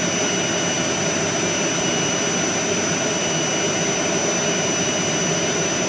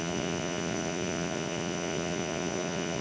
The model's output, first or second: second